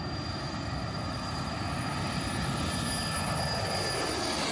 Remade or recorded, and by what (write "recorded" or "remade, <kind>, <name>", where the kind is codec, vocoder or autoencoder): recorded